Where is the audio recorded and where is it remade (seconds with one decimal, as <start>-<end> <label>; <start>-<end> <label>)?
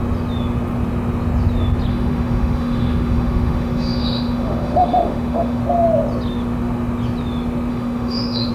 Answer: 0.0-1.9 recorded; 1.9-5.6 remade; 5.6-7.7 recorded; 7.7-8.5 remade